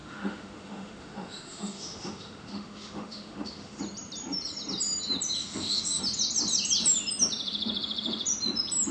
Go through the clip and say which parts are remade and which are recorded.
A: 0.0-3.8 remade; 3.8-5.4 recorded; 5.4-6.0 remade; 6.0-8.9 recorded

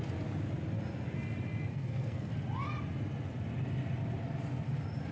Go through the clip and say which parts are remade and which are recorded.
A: 0.0-1.7 recorded; 1.7-2.3 remade; 2.3-5.1 recorded

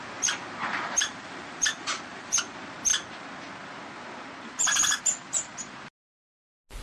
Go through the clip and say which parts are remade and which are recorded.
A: 0.0-0.6 recorded; 0.6-2.4 remade; 2.4-6.8 recorded

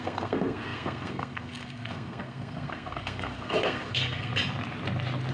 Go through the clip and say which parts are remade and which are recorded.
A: 0.0-4.3 remade; 4.3-5.3 recorded

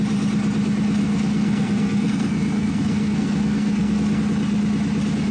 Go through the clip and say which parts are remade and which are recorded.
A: 0.0-1.0 recorded; 1.0-4.2 remade; 4.2-5.3 recorded

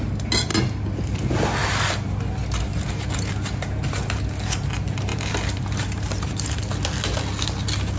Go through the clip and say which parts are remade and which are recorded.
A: 0.0-5.1 recorded; 5.1-6.6 remade; 6.6-8.0 recorded

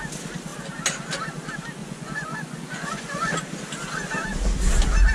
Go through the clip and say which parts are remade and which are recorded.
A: 0.0-1.8 recorded; 1.8-3.3 remade; 3.3-5.1 recorded

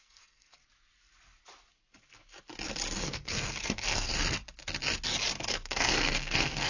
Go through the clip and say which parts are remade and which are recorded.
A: 0.0-0.6 remade; 0.6-3.0 recorded; 3.0-4.1 remade; 4.1-5.5 recorded; 5.5-6.7 remade